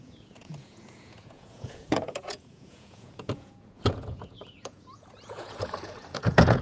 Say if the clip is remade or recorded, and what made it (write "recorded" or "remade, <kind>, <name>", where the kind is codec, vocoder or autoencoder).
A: remade, vocoder, Vocos